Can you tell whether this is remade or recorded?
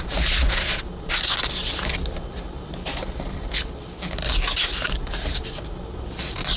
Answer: recorded